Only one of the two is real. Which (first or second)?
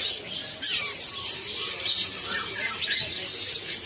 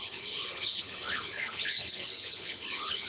first